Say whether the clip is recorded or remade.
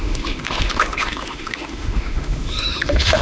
remade